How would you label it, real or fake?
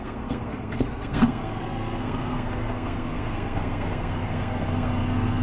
fake